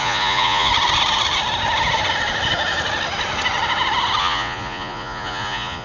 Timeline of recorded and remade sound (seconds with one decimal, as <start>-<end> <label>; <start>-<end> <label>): 0.0-0.7 remade; 0.7-4.2 recorded; 4.2-5.8 remade